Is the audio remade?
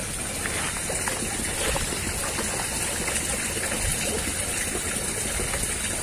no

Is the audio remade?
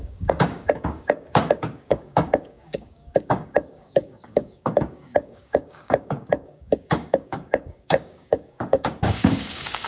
yes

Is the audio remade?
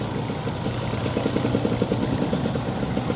no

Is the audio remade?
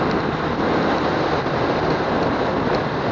no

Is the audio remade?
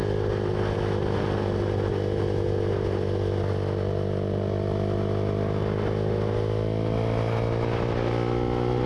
no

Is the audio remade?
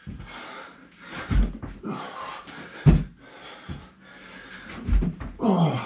no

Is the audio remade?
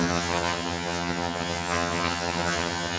yes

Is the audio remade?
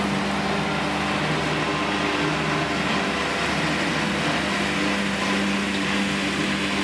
no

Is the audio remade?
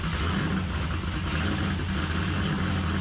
no